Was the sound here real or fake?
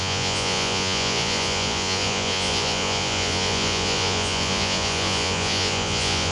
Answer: fake